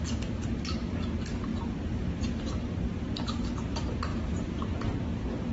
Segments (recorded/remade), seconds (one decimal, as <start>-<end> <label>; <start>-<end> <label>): 0.0-1.5 recorded; 1.5-2.2 remade; 2.2-4.1 recorded; 4.1-4.7 remade; 4.7-5.5 recorded